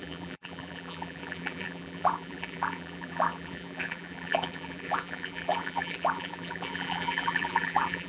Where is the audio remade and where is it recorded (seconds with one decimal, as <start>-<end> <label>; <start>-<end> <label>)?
0.0-8.1 remade